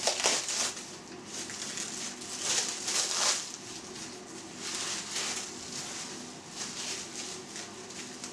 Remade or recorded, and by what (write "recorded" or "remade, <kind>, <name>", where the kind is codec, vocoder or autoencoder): recorded